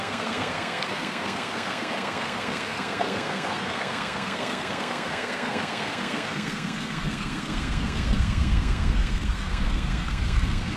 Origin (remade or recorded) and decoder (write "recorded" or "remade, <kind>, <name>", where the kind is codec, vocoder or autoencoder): remade, codec, SNAC